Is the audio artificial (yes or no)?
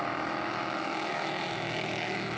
yes